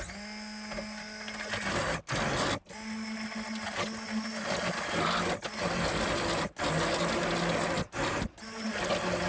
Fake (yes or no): no